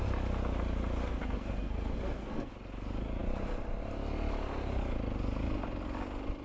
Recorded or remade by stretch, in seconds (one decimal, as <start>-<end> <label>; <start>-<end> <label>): 0.0-1.0 recorded; 1.0-2.5 remade; 2.5-6.4 recorded

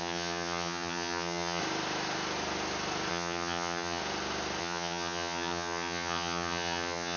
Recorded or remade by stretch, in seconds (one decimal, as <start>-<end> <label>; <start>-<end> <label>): 0.0-1.6 remade; 1.6-3.1 recorded; 3.1-4.0 remade; 4.0-4.6 recorded; 4.6-7.2 remade